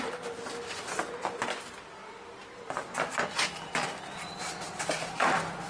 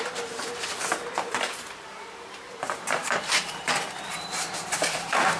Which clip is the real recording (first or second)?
first